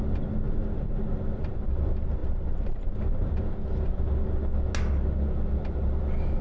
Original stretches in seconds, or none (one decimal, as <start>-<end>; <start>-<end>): 0.0-6.4